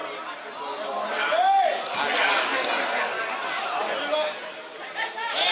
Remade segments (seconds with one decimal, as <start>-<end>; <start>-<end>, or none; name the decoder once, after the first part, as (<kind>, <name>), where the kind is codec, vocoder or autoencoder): none